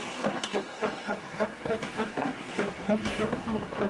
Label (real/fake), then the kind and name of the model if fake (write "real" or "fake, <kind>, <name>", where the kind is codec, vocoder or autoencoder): fake, codec, SNAC